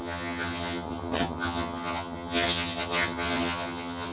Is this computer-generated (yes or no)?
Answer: yes